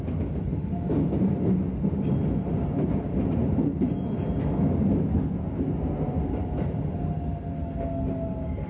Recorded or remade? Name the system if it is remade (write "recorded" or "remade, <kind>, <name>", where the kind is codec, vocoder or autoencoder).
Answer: recorded